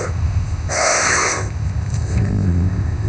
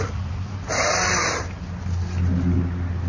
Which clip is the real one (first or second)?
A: second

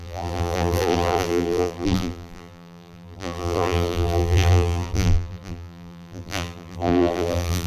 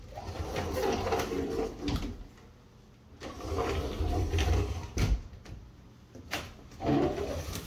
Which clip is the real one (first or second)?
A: second